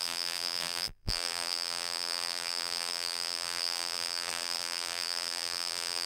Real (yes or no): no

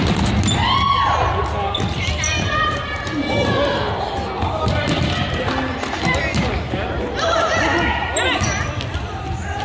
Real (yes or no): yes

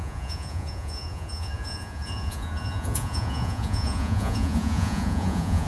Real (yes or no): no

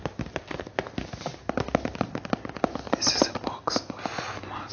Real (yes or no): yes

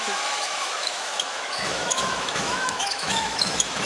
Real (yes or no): no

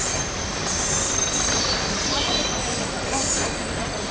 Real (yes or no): yes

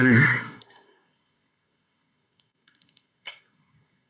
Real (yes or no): no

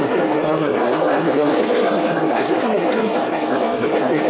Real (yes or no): no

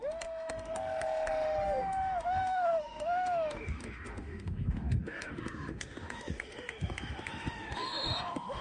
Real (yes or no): no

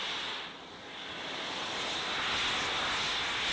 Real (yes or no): yes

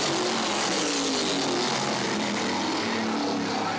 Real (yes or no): yes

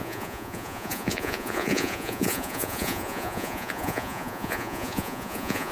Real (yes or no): no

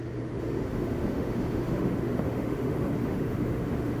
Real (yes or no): no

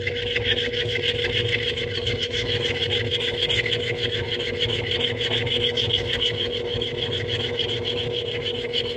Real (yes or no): yes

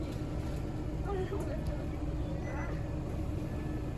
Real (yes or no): yes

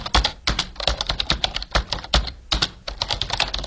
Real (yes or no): yes